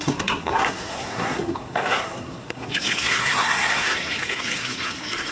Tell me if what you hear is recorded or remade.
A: remade